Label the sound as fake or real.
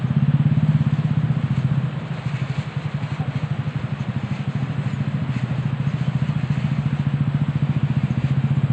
real